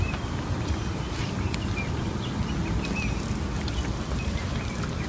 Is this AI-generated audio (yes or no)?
no